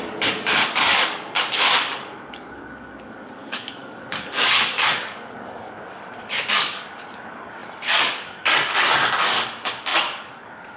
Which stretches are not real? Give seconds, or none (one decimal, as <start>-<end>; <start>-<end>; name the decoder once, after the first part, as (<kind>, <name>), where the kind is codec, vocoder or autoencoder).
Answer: 0.0-10.8 (codec, DAC)